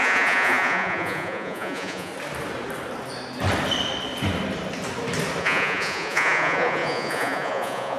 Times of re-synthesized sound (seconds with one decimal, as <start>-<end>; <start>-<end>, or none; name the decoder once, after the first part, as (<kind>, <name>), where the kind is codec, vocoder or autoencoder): 0.0-2.1 (vocoder, Vocos); 5.4-8.0